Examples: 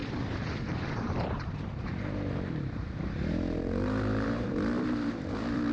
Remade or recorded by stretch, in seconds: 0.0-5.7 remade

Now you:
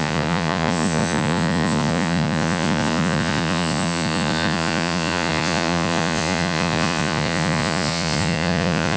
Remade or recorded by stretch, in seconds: 0.0-9.0 remade

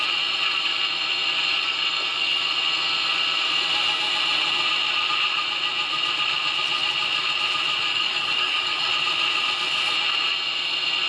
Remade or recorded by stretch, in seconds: 0.0-7.9 recorded; 7.9-8.9 remade; 8.9-11.1 recorded

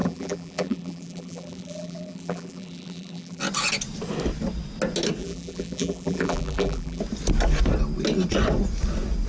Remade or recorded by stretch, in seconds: 0.0-3.4 remade; 3.4-5.2 recorded; 5.2-7.0 remade; 7.0-9.3 recorded

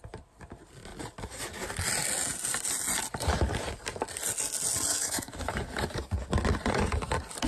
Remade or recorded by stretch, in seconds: 0.0-4.9 recorded; 4.9-5.6 remade; 5.6-7.5 recorded

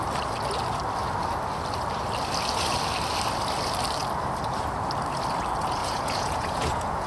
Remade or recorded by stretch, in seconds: 0.0-5.8 recorded; 5.8-7.1 remade

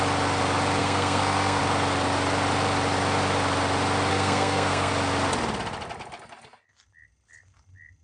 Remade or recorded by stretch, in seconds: 0.0-0.8 recorded; 0.8-1.6 remade; 1.6-4.1 recorded; 4.1-4.9 remade; 4.9-8.0 recorded